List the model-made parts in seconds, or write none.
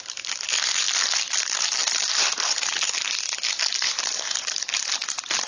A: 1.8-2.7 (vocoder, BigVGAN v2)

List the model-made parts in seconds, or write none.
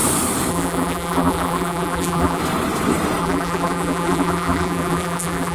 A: 0.5-2.4 (vocoder, BigVGAN v2); 3.2-5.5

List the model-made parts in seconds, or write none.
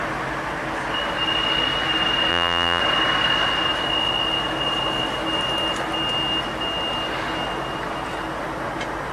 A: 2.3-2.8 (vocoder, BigVGAN v2)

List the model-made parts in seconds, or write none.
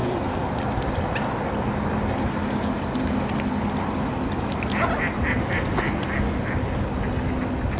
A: none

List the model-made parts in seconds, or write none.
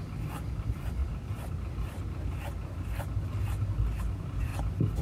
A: 0.0-1.0 (vocoder, BigVGAN v2); 4.0-4.5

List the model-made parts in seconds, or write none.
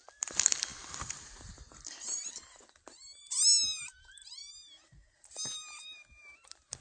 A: 0.0-3.2 (vocoder, BigVGAN v2); 3.8-4.4; 6.1-6.8